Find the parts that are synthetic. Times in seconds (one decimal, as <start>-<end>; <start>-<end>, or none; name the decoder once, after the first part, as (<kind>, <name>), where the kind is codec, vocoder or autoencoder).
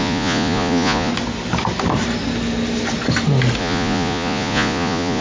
0.0-1.1 (vocoder, Vocos); 3.6-5.2